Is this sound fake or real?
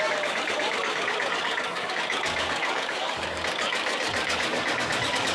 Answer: fake